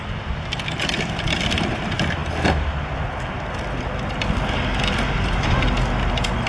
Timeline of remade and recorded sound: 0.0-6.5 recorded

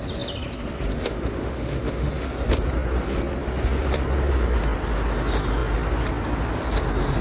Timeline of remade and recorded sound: 0.0-0.9 recorded; 0.9-2.1 remade; 2.1-7.2 recorded

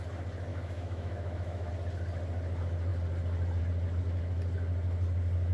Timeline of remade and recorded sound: 0.0-0.5 recorded; 0.5-1.7 remade; 1.7-5.5 recorded

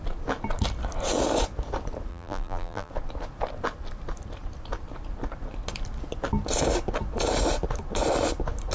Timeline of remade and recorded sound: 0.0-2.1 recorded; 2.1-2.9 remade; 2.9-8.7 recorded

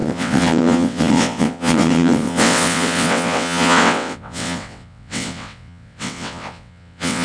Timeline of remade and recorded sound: 0.0-7.2 remade

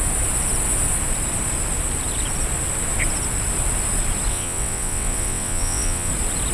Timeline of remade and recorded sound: 0.0-4.3 recorded; 4.3-6.1 remade; 6.1-6.5 recorded

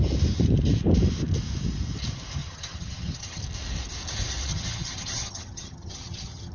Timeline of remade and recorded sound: 0.0-2.4 recorded; 2.4-3.4 remade; 3.4-4.5 recorded; 4.5-6.5 remade

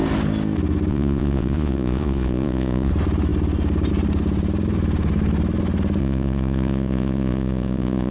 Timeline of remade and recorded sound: 0.0-0.9 recorded; 0.9-2.9 remade; 2.9-6.0 recorded; 6.0-8.1 remade